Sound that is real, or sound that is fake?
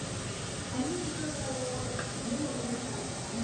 real